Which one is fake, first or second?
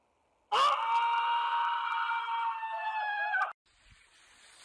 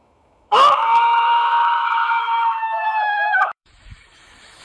second